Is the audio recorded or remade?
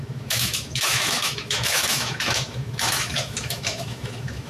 remade